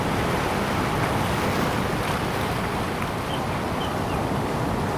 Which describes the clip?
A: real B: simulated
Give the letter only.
A